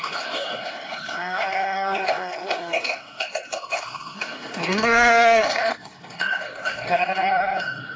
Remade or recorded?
remade